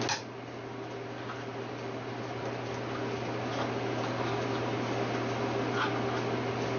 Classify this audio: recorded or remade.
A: recorded